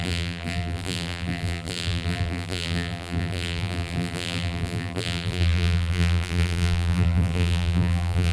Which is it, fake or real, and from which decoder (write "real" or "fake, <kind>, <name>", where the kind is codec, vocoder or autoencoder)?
fake, vocoder, BigVGAN v2